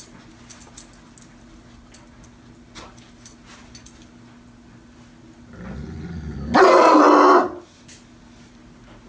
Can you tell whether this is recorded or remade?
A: recorded